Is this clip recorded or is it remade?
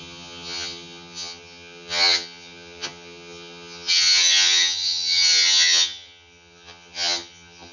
remade